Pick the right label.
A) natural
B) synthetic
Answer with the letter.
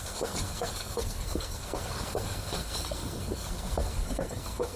B